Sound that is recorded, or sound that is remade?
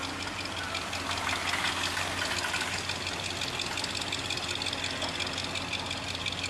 recorded